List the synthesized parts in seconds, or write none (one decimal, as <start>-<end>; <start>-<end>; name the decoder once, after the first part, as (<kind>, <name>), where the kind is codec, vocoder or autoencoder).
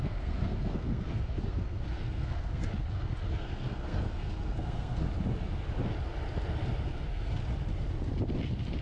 0.0-2.7 (codec, SNAC); 3.3-5.0; 6.8-7.4